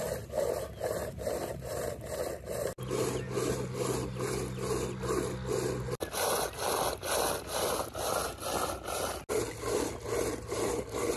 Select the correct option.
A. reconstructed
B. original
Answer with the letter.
B